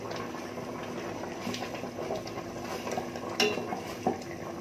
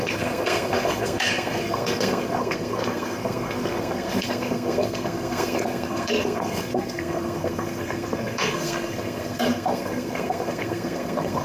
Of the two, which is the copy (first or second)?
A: second